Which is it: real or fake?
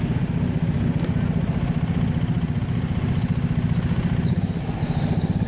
real